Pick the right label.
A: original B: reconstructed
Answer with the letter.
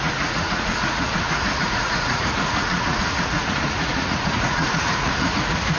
B